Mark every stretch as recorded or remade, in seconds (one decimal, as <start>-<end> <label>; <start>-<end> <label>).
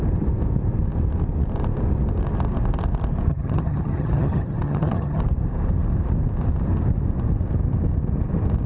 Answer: 0.0-3.3 recorded; 3.3-5.2 remade; 5.2-8.7 recorded